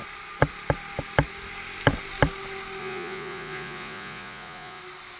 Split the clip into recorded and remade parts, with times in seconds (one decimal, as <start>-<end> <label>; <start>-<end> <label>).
0.0-2.8 recorded; 2.8-4.8 remade; 4.8-5.2 recorded